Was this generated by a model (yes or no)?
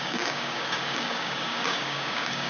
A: yes